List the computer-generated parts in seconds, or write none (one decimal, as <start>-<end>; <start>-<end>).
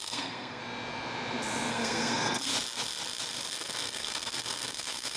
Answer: 0.0-0.6; 1.7-2.5; 3.5-5.2